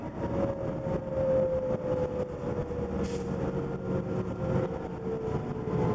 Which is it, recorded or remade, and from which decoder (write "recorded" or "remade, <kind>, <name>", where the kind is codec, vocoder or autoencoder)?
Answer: recorded